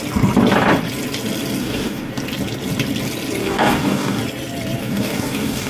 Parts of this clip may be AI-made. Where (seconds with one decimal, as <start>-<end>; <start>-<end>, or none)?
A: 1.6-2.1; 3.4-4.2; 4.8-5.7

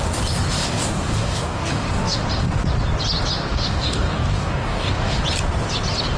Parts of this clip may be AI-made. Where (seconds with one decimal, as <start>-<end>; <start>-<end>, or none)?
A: 0.6-2.2; 3.5-5.2

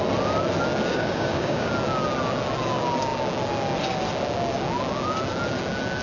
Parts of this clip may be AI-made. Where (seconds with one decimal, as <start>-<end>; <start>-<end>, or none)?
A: 0.9-1.7

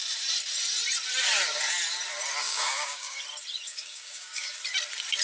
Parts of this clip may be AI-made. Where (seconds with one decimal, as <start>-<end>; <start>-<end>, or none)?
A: 2.4-3.2; 3.7-4.6

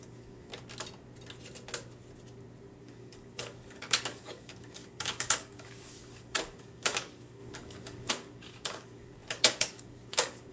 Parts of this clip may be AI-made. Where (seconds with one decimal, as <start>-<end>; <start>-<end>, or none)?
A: 0.0-0.5; 2.8-10.5

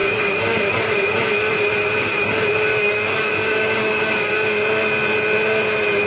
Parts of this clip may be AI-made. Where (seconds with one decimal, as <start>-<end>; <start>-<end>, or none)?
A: 0.0-0.7; 2.7-4.3

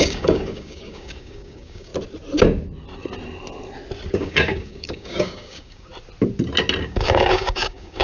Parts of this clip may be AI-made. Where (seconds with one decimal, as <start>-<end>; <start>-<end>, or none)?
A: 0.0-1.9; 4.1-5.9; 6.8-8.0